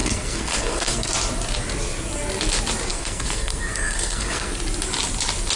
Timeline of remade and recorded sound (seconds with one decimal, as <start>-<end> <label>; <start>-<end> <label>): 0.0-1.1 remade; 1.1-2.9 recorded; 2.9-4.5 remade; 4.5-5.6 recorded